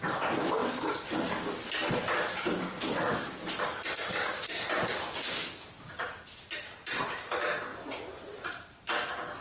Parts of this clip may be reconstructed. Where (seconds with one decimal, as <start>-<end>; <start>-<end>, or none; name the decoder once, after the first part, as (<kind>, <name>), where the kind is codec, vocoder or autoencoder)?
0.6-1.3 (vocoder, BigVGAN v2); 1.8-6.0